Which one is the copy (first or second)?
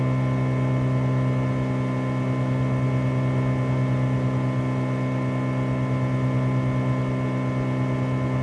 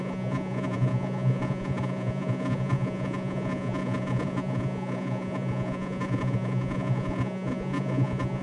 second